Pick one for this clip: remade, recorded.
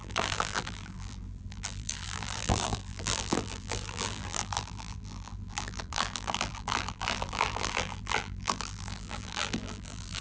remade